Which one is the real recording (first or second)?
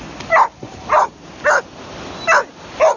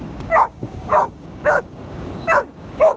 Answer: first